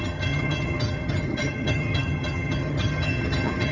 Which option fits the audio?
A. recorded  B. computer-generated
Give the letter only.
B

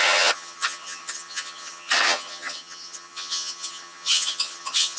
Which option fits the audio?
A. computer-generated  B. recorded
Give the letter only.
A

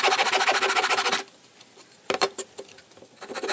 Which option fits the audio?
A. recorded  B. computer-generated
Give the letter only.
A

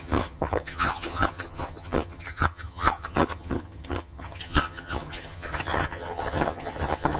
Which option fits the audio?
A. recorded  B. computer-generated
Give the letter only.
B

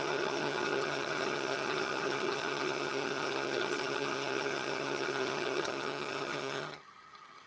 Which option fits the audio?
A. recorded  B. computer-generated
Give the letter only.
B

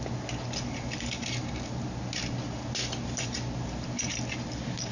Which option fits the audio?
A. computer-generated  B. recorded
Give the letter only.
B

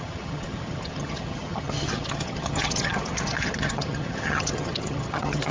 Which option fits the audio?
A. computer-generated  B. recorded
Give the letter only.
A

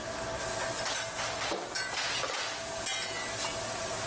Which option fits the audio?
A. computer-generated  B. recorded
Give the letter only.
B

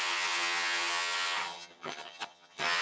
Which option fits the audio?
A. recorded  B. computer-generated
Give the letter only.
B